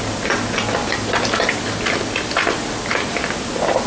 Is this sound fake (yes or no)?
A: no